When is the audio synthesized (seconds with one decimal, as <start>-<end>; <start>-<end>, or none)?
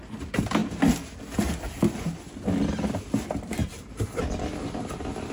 3.6-4.2